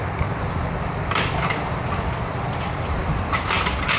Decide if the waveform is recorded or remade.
remade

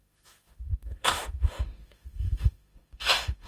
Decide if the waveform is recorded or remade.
remade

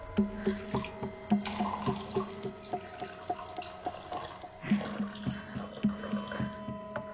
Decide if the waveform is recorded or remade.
recorded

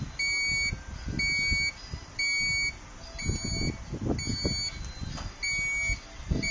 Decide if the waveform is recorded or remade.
recorded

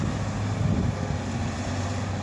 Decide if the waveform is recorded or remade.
recorded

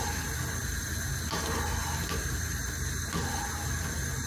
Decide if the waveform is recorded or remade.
recorded